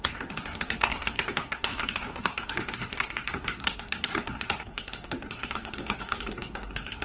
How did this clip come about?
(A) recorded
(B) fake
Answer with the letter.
B